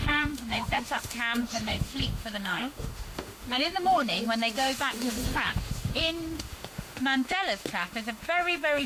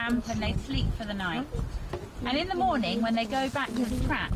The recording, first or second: second